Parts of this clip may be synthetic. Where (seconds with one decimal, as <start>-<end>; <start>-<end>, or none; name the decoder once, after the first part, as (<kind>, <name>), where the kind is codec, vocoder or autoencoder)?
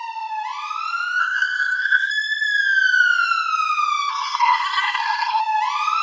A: 1.2-2.1 (codec, SNAC); 4.1-5.4